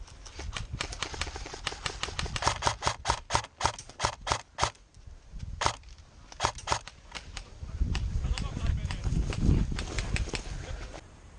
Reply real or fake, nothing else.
real